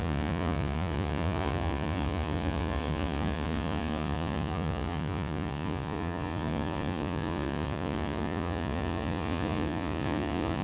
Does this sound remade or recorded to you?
remade